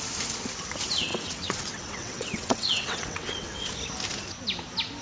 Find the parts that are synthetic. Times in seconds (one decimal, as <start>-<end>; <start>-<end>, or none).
1.1-3.7